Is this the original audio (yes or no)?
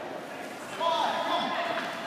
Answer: yes